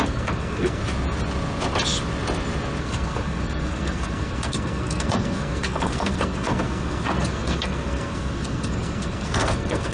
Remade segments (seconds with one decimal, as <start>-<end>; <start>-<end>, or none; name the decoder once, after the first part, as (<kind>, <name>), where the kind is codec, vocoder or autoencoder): 0.0-0.8 (codec, SNAC); 2.8-9.9